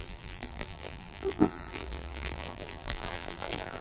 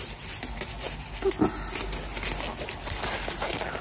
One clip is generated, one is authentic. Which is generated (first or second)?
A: first